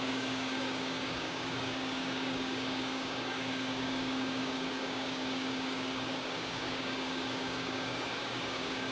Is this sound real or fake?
fake